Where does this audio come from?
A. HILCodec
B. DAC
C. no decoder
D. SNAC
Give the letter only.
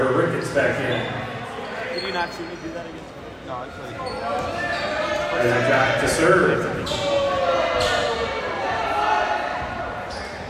C